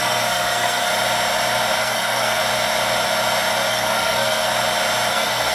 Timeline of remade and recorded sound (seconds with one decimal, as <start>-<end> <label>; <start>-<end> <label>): 0.0-0.9 remade; 0.9-1.8 recorded; 1.8-2.4 remade; 2.4-3.7 recorded; 3.7-4.5 remade; 4.5-5.1 recorded; 5.1-5.5 remade